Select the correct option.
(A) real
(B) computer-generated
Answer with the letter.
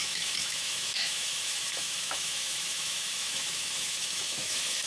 B